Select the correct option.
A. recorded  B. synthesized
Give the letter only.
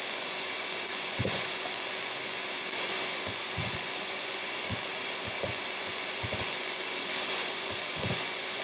B